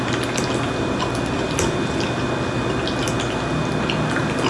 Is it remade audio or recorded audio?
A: recorded